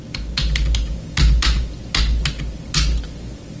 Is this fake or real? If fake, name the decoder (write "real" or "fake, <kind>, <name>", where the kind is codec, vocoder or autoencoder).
real